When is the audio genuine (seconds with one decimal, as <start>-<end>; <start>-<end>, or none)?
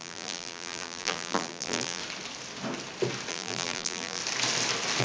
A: 2.0-3.3; 4.2-5.0